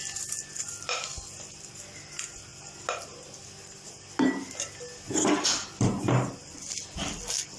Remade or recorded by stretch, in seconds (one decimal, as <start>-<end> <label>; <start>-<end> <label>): 0.0-7.6 recorded